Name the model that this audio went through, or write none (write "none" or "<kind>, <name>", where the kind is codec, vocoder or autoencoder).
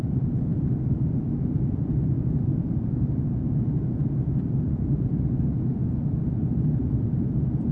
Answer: vocoder, Vocos